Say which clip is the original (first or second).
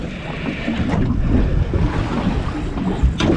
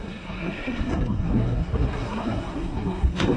first